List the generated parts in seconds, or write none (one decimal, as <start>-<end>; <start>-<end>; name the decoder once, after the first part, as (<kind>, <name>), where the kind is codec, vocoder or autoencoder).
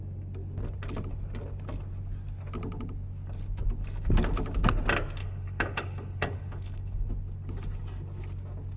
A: 5.2-7.1 (codec, HILCodec)